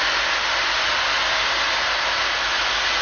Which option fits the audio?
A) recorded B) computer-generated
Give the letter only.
A